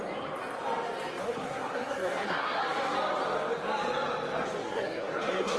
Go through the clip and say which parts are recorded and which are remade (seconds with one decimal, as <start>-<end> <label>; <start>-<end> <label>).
0.0-1.2 recorded; 1.2-2.6 remade; 2.6-4.6 recorded; 4.6-5.6 remade